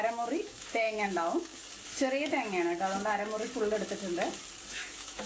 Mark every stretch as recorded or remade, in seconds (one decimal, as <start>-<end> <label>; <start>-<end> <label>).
0.0-1.5 remade; 1.5-4.7 recorded; 4.7-5.3 remade

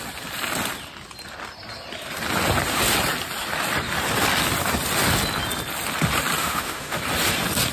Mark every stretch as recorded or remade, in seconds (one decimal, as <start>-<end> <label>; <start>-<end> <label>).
0.0-6.4 recorded; 6.4-7.0 remade; 7.0-7.7 recorded

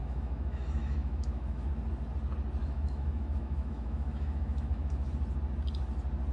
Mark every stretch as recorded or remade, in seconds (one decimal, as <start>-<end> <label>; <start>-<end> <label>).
0.0-1.7 remade; 1.7-2.6 recorded; 2.6-5.1 remade; 5.1-6.3 recorded